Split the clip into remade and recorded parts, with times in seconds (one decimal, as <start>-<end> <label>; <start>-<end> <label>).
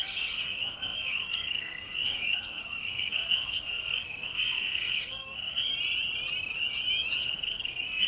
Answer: 0.0-5.7 remade; 5.7-7.2 recorded; 7.2-8.1 remade